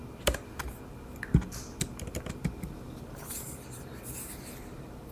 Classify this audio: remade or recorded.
recorded